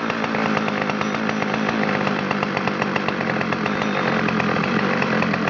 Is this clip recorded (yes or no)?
no